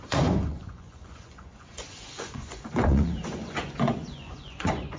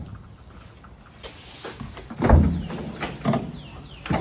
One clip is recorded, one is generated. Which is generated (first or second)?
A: first